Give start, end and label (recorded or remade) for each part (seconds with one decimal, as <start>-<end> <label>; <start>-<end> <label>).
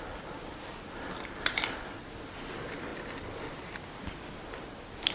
0.0-5.1 recorded